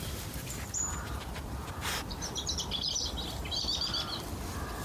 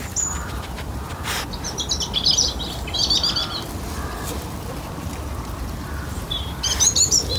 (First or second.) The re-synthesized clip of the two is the first